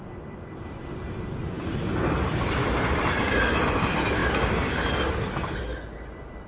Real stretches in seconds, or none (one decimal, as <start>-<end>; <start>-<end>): 0.0-6.5